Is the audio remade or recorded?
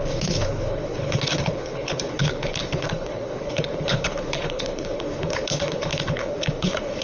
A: remade